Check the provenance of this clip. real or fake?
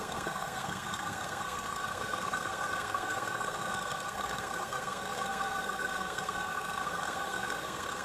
fake